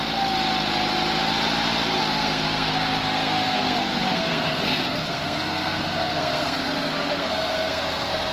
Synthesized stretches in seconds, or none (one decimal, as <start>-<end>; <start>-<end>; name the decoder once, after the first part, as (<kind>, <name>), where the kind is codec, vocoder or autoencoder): 2.0-8.3 (codec, SNAC)